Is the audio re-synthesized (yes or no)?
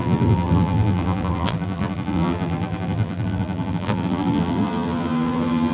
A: yes